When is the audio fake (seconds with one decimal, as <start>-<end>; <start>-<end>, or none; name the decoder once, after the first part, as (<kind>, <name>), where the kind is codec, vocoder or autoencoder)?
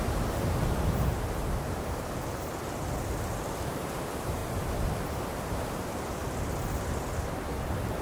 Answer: 0.0-6.2 (vocoder, BigVGAN v2); 7.2-8.0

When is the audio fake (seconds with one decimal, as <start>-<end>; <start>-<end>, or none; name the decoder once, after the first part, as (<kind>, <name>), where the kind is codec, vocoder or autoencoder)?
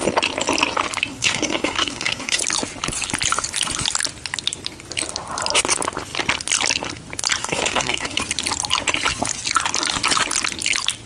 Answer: 1.1-2.4 (codec, SNAC); 7.4-8.2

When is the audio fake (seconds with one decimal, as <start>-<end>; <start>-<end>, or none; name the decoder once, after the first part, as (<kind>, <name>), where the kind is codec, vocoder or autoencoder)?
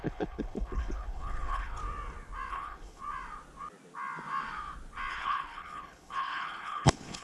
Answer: 0.0-1.8 (codec, HILCodec); 2.5-3.0; 5.1-7.2